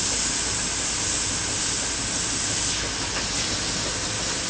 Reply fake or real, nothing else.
real